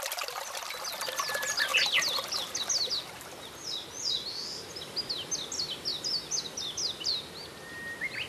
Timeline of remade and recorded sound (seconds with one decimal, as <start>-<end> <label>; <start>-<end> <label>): 0.0-8.3 recorded

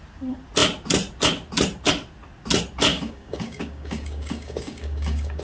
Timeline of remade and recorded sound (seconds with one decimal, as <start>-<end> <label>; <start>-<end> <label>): 0.0-2.9 recorded; 2.9-5.4 remade

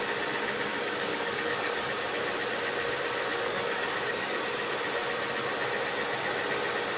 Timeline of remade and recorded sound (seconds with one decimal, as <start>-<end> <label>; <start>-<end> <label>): 0.0-0.7 recorded; 0.7-1.9 remade; 1.9-3.3 recorded; 3.3-4.4 remade; 4.4-7.0 recorded

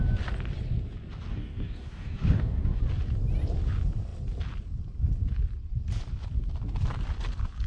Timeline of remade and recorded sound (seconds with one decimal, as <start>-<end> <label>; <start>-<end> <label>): 0.0-1.3 recorded; 1.3-2.8 remade; 2.8-7.7 recorded